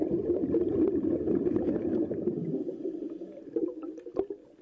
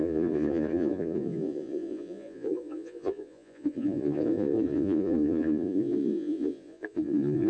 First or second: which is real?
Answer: first